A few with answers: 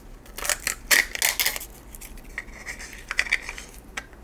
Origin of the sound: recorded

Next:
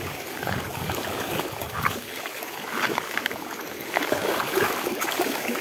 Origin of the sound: remade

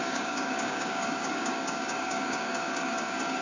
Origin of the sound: remade